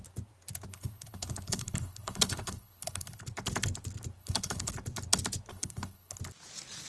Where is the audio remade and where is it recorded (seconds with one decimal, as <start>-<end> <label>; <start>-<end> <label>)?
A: 0.0-0.7 recorded; 0.7-3.2 remade; 3.2-4.2 recorded; 4.2-4.7 remade; 4.7-5.5 recorded; 5.5-6.2 remade; 6.2-6.9 recorded